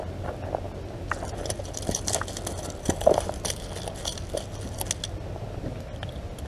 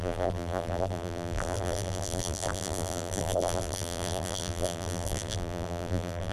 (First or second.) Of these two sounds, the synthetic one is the second